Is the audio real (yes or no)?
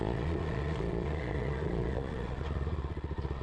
no